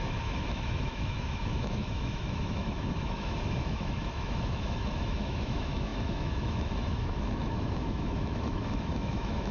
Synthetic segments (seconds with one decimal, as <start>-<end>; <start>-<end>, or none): 0.0-9.5